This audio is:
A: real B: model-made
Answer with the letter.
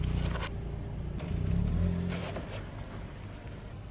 A